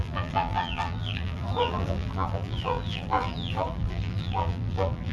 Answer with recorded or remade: remade